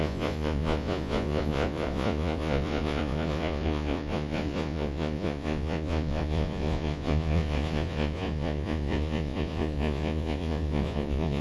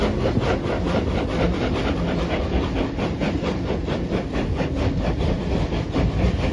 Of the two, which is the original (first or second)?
second